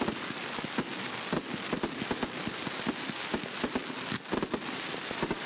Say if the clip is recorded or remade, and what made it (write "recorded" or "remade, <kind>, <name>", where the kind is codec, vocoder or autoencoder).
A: recorded